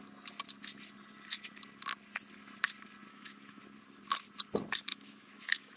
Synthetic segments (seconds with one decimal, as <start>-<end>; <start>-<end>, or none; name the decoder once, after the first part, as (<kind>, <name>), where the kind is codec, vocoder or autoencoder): 3.1-3.6 (autoencoder, DAC-VAE); 4.9-5.8

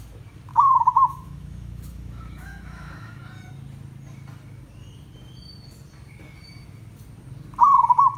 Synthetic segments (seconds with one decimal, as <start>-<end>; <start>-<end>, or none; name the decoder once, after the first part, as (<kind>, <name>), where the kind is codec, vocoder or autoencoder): 0.5-3.2 (autoencoder, DAC-VAE)

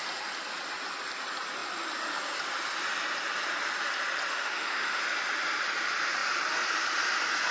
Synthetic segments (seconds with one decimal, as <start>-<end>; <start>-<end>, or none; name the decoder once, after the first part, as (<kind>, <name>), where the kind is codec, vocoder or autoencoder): 4.3-5.0 (autoencoder, DAC-VAE)

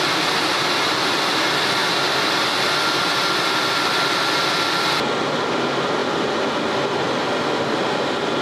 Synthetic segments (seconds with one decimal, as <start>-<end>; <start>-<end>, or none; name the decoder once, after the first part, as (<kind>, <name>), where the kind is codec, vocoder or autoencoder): none

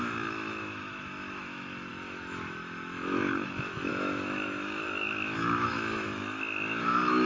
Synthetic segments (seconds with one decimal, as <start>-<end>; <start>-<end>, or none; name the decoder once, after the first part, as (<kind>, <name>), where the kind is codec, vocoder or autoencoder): 0.0-6.2 (autoencoder, DAC-VAE); 6.8-7.3

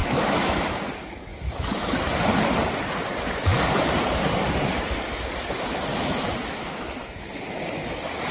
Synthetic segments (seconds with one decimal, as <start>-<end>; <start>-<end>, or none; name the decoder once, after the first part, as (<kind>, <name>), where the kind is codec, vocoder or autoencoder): 0.0-0.6 (autoencoder, DAC-VAE); 1.3-2.0; 5.9-7.3

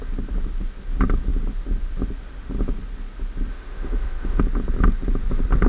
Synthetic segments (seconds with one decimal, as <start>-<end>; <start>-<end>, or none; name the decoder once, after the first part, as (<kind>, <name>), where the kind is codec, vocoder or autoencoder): 3.5-4.4 (autoencoder, DAC-VAE)